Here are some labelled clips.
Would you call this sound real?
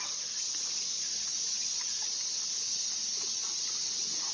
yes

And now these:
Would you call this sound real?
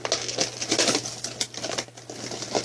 yes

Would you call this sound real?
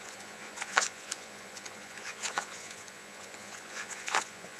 no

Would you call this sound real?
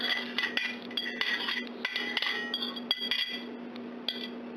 yes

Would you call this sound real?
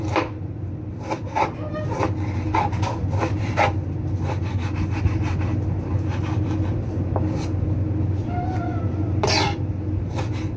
yes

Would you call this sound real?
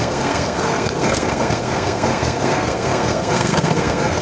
no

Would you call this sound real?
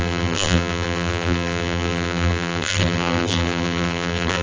no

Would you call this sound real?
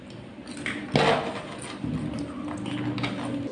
yes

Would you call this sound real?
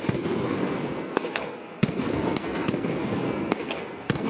no